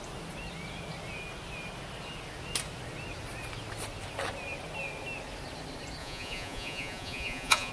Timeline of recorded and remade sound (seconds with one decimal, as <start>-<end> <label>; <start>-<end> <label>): 0.0-6.0 recorded; 6.0-7.7 remade